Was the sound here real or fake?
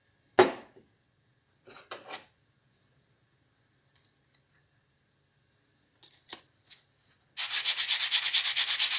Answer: real